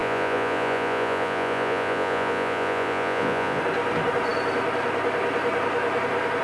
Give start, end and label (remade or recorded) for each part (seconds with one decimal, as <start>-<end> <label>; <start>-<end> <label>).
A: 0.0-3.6 remade; 3.6-6.4 recorded